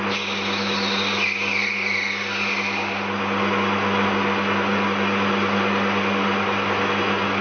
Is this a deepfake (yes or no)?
no